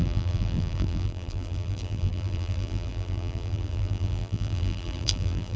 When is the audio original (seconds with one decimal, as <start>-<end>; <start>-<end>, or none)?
none